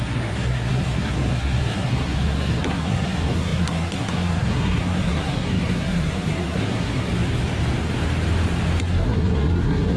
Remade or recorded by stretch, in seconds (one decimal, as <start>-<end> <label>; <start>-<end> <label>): 0.0-7.1 remade; 7.1-8.8 recorded; 8.8-10.0 remade